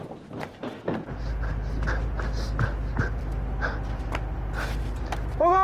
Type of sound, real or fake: real